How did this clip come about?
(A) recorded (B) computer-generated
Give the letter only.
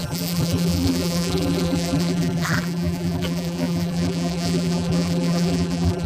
B